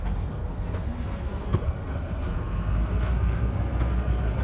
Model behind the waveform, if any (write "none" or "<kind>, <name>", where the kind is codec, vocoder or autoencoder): codec, SNAC